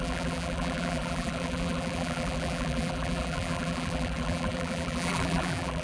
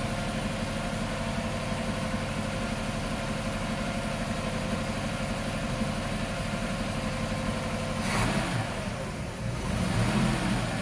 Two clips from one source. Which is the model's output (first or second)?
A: first